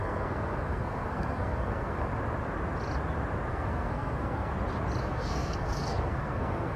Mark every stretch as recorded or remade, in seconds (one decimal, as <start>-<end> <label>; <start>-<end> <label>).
0.0-2.1 remade; 2.1-3.5 recorded; 3.5-4.5 remade; 4.5-5.0 recorded; 5.0-6.8 remade